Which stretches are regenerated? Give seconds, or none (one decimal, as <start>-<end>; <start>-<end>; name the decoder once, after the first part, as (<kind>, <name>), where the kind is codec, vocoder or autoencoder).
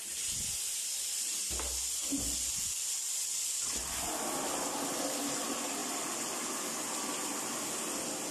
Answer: none